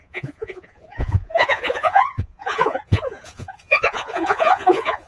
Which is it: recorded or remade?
remade